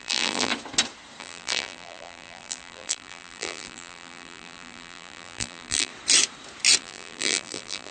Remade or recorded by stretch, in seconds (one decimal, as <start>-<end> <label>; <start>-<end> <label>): 0.0-0.5 remade; 0.5-1.2 recorded; 1.2-5.9 remade; 5.9-6.8 recorded; 6.8-7.9 remade